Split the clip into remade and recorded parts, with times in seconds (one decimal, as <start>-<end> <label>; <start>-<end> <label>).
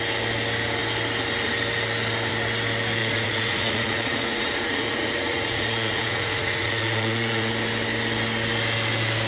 0.0-3.0 recorded; 3.0-7.5 remade; 7.5-9.3 recorded